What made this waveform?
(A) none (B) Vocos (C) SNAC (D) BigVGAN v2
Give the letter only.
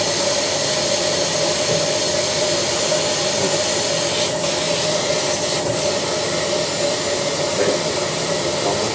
A